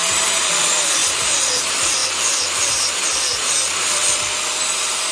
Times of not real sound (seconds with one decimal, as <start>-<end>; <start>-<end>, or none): 0.0-0.5; 1.0-1.5